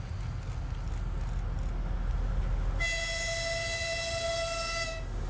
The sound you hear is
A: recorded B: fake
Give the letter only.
A